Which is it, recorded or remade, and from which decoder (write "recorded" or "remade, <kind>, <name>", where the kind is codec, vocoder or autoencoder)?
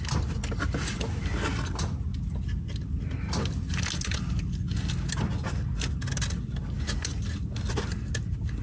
recorded